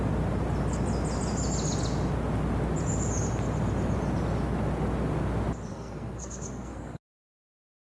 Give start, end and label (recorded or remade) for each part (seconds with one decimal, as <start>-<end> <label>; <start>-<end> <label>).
0.0-5.7 recorded; 5.7-7.0 remade; 7.0-7.8 recorded